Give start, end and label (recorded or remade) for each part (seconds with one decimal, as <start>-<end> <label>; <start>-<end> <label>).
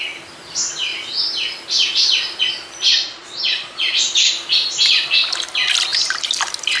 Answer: 0.0-2.9 recorded; 2.9-4.0 remade; 4.0-6.8 recorded